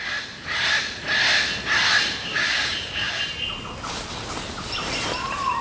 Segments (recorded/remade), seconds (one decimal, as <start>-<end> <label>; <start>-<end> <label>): 0.0-2.2 recorded; 2.2-3.2 remade; 3.2-5.6 recorded

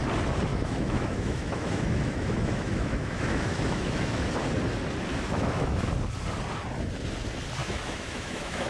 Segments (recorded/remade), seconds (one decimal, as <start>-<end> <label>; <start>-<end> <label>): 0.0-0.5 recorded; 0.5-4.3 remade; 4.3-5.1 recorded; 5.1-5.9 remade; 5.9-7.6 recorded; 7.6-8.7 remade

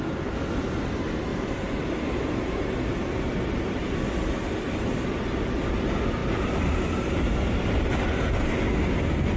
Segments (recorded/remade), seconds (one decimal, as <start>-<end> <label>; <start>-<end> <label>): 0.0-1.3 recorded; 1.3-4.0 remade; 4.0-6.2 recorded; 6.2-8.7 remade; 8.7-9.4 recorded

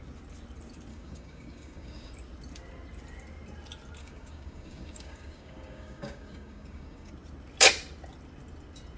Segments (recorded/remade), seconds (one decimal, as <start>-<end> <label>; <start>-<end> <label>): 0.0-0.9 recorded; 0.9-2.1 remade; 2.1-4.0 recorded; 4.0-7.1 remade; 7.1-9.0 recorded

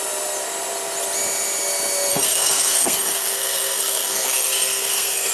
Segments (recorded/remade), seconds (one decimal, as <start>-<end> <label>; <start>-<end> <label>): 0.0-2.1 recorded; 2.1-5.3 remade

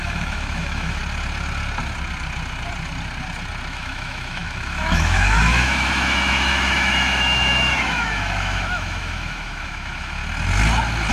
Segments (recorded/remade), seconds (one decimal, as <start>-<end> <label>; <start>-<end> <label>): 0.0-1.0 remade; 1.0-3.7 recorded; 3.7-10.2 remade; 10.2-11.1 recorded